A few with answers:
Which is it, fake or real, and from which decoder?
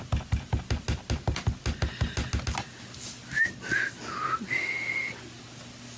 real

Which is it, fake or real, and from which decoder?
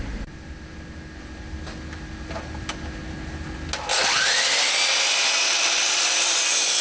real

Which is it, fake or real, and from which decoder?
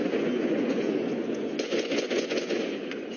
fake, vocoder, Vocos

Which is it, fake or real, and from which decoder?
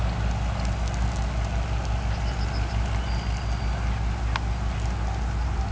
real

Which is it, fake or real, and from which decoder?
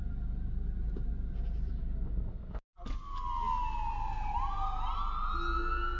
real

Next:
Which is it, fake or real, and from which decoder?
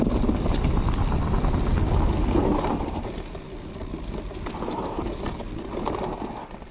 real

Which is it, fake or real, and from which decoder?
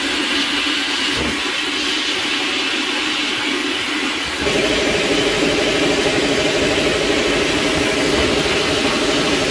real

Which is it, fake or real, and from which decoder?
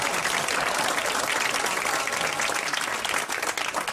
real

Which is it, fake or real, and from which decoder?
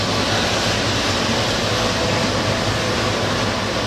real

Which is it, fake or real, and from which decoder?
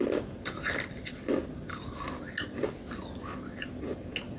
real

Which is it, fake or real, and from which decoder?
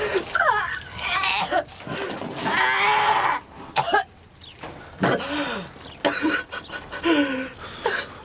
real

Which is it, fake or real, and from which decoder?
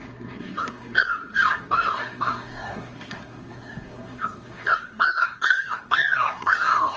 fake, codec, SNAC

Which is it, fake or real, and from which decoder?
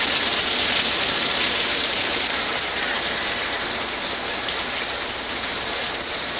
fake, vocoder, BigVGAN v2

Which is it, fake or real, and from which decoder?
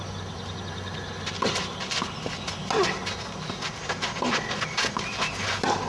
real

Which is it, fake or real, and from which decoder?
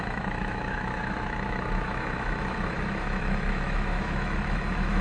fake, autoencoder, DAC-VAE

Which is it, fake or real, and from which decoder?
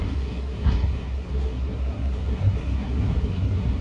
fake, codec, SNAC